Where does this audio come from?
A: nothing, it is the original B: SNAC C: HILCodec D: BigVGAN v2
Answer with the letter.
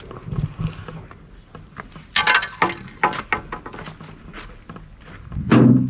A